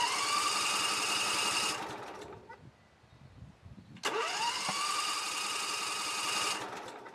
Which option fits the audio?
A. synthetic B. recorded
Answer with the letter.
B